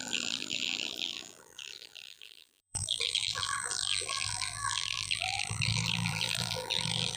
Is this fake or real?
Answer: fake